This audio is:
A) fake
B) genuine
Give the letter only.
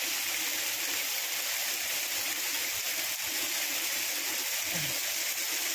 B